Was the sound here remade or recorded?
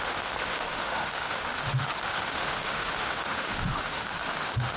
remade